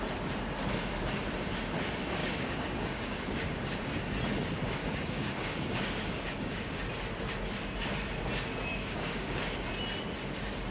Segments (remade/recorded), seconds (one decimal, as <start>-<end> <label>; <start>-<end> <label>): 0.0-2.2 recorded; 2.2-4.0 remade; 4.0-4.8 recorded; 4.8-6.8 remade; 6.8-8.7 recorded; 8.7-9.4 remade; 9.4-10.7 recorded